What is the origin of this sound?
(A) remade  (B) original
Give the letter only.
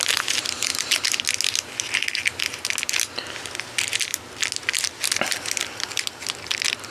B